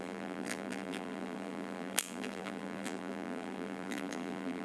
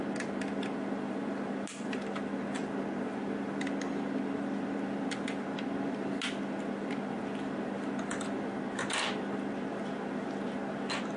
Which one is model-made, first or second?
first